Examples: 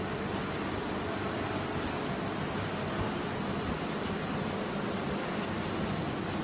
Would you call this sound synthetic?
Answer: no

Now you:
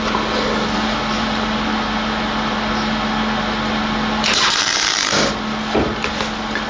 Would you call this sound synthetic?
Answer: no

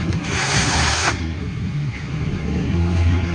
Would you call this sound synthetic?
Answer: yes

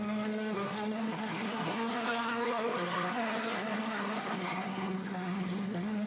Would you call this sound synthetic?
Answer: yes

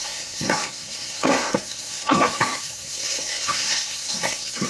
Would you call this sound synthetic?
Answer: yes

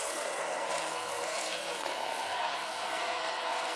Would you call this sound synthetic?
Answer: yes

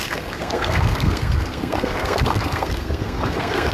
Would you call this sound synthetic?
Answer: yes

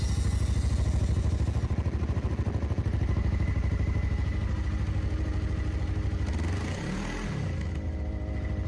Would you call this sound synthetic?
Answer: no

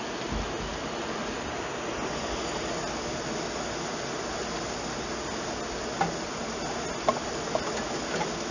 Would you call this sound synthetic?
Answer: no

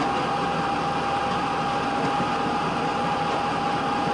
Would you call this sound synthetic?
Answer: no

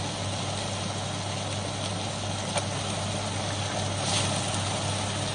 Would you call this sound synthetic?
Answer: no